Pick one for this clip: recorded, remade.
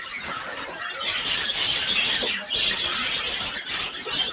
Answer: recorded